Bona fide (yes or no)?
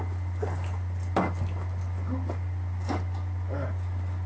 yes